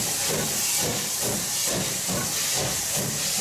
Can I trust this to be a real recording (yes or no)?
yes